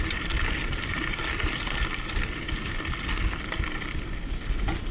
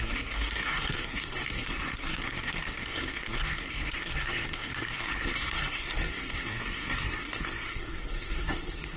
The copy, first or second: second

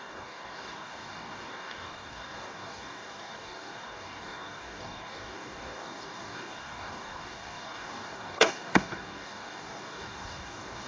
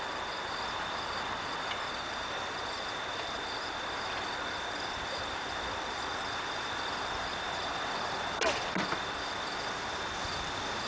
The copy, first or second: first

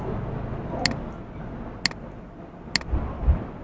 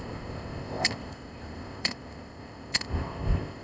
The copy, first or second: second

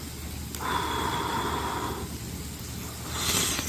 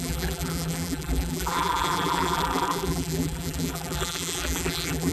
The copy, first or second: second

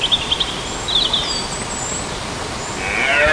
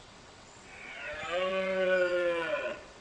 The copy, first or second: second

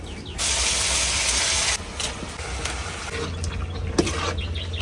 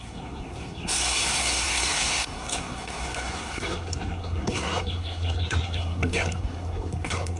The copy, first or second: second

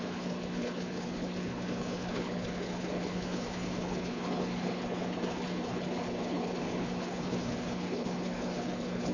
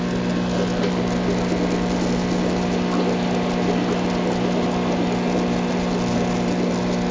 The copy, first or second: first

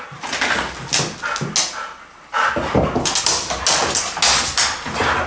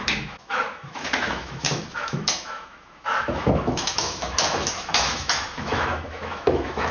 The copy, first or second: second